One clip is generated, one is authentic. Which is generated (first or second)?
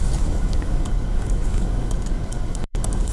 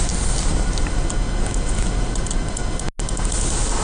first